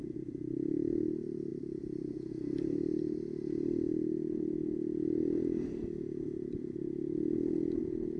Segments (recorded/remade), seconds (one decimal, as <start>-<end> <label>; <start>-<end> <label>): 0.0-8.2 recorded